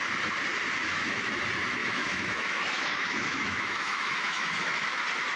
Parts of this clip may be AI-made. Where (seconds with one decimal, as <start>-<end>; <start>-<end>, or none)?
0.8-1.4; 1.8-5.0